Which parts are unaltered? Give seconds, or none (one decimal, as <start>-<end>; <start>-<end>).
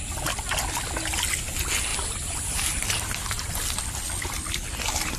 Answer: 0.0-1.9; 3.5-5.2